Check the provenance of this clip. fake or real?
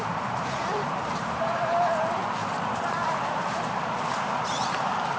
fake